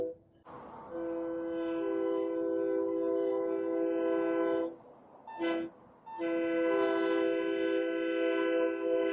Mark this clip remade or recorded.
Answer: recorded